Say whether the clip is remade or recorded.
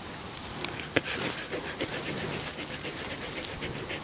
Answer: recorded